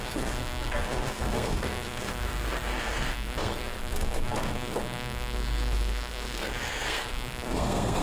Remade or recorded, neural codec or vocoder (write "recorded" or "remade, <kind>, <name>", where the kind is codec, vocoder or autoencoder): remade, codec, SNAC